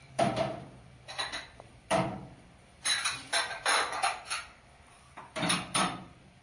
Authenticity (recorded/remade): remade